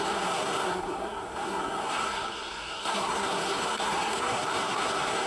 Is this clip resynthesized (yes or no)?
yes